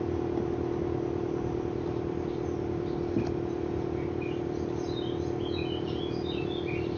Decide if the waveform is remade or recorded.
recorded